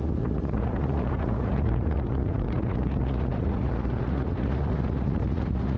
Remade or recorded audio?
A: remade